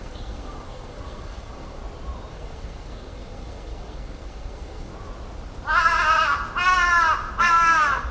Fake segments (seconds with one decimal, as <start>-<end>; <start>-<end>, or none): 0.0-1.8; 2.3-4.9; 7.4-8.1